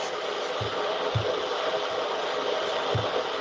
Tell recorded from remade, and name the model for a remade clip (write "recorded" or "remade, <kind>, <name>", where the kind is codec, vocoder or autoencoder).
recorded